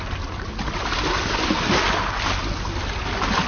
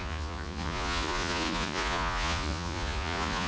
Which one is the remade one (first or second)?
second